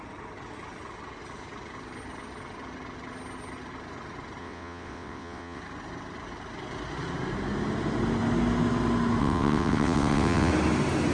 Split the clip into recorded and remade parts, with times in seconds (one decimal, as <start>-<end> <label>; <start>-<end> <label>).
0.0-4.4 recorded; 4.4-5.6 remade; 5.6-9.2 recorded; 9.2-10.5 remade; 10.5-11.1 recorded